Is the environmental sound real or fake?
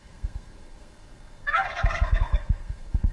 fake